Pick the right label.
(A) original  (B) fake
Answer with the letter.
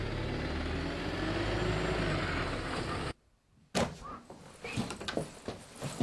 A